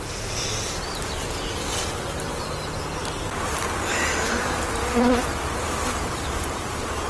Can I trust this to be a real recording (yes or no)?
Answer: yes